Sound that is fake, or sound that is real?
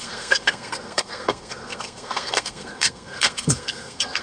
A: fake